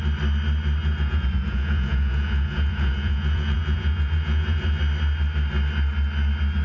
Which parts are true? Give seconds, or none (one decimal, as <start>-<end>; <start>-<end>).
0.0-0.8; 4.8-6.6